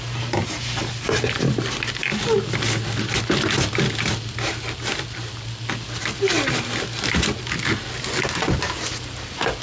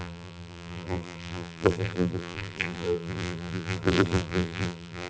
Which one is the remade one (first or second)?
second